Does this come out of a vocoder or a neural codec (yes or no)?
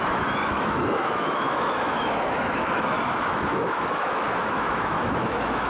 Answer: yes